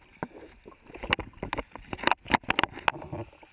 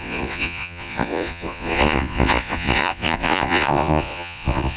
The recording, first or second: first